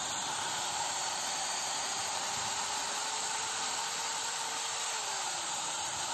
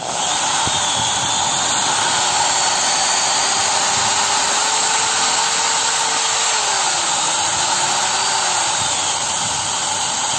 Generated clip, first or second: first